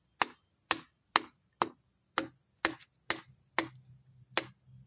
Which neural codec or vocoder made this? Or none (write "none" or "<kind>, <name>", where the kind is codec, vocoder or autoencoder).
none